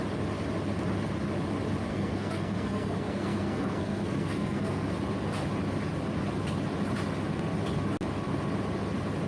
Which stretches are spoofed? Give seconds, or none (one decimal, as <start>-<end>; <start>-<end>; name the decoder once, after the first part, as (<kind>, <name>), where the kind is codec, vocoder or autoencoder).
1.9-4.9 (codec, SNAC)